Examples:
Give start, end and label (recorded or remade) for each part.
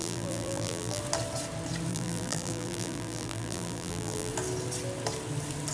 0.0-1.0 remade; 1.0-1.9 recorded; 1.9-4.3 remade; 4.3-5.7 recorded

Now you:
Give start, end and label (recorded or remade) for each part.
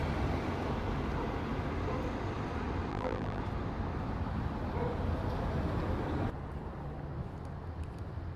0.0-2.9 recorded; 2.9-3.4 remade; 3.4-8.4 recorded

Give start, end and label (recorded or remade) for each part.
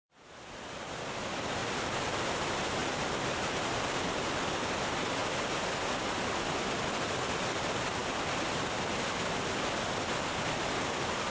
0.0-1.6 recorded; 1.6-2.4 remade; 2.4-2.8 recorded; 2.8-4.3 remade; 4.3-11.3 recorded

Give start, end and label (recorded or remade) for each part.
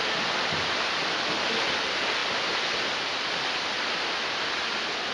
0.0-5.1 recorded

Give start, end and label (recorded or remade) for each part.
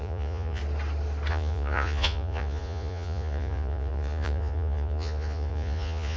0.0-0.6 remade; 0.6-1.3 recorded; 1.3-6.2 remade